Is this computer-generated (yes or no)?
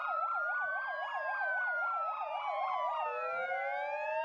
no